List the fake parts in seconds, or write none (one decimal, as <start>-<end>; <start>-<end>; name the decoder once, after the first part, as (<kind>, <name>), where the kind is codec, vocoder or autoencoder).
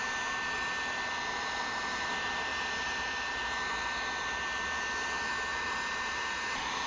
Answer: none